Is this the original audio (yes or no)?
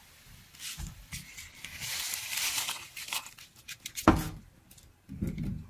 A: yes